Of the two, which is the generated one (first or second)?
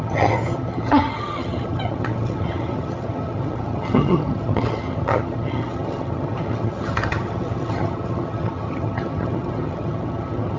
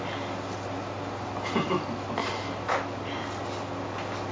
first